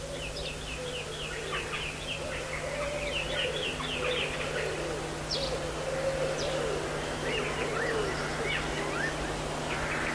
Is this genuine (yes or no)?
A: yes